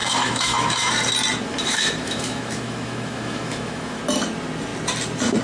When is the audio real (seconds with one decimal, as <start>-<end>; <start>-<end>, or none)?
0.9-1.5; 4.0-5.4